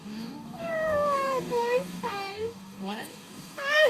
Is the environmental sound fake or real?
fake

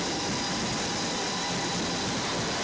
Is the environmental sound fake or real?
real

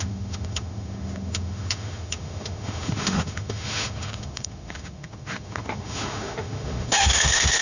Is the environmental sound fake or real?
fake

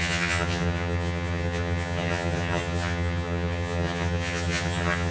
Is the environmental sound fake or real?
fake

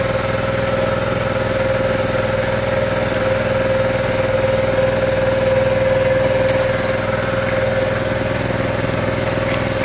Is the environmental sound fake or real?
real